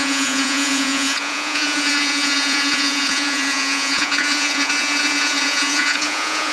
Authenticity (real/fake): fake